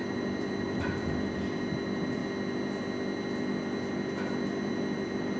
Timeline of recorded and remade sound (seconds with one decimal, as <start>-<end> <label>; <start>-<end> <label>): 0.0-2.2 remade; 2.2-3.4 recorded; 3.4-5.4 remade